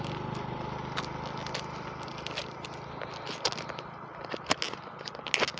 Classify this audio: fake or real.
real